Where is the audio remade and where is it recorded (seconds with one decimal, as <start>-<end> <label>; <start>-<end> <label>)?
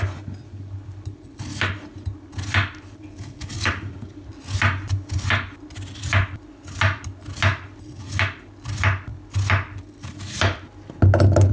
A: 0.0-11.5 recorded